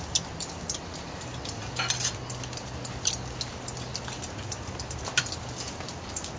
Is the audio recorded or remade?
recorded